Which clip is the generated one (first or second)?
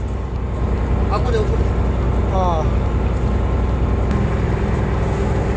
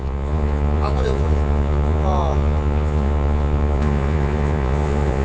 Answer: second